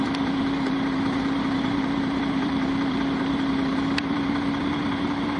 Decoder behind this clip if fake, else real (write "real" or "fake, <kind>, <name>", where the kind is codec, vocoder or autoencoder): fake, vocoder, BigVGAN v2